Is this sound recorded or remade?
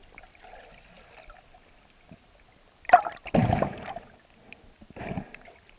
recorded